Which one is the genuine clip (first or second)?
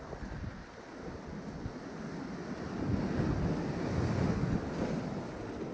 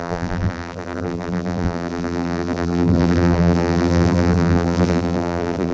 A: first